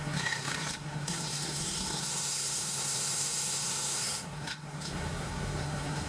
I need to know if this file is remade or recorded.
remade